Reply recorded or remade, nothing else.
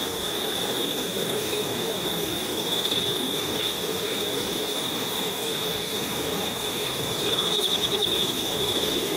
remade